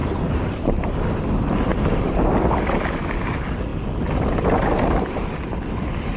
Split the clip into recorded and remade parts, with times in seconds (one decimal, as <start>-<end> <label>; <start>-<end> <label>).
0.0-0.8 remade; 0.8-1.7 recorded; 1.7-2.3 remade; 2.3-6.2 recorded